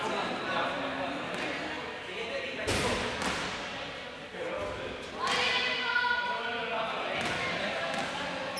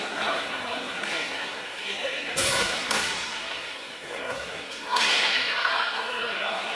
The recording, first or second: first